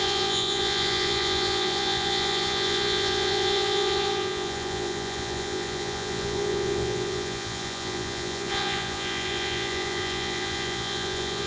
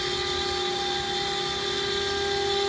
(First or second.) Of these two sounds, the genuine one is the second